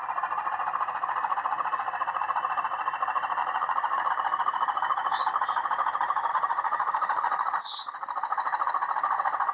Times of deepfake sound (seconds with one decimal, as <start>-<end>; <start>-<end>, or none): 3.4-4.1; 6.3-7.6